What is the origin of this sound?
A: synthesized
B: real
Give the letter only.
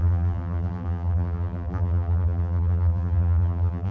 A